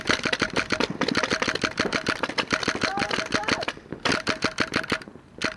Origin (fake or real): fake